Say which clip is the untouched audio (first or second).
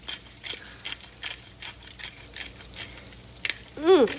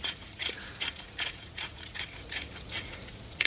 first